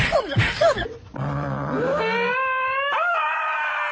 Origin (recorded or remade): recorded